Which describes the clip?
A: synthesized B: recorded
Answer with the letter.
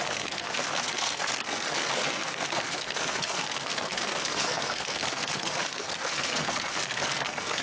A